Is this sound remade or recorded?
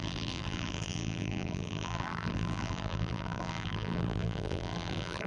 remade